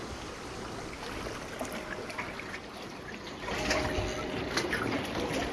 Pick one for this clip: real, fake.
real